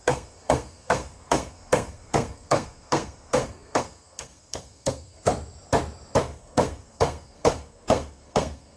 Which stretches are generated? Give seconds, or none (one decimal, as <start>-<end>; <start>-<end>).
0.0-5.3; 6.2-8.8